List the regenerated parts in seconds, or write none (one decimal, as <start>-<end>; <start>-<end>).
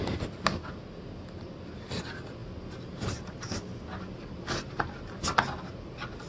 none